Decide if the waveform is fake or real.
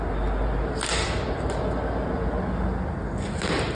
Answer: real